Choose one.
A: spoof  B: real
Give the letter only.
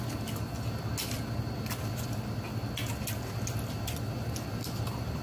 B